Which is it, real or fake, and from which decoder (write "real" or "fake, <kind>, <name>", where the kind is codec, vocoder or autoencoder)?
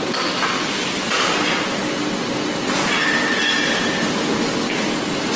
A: real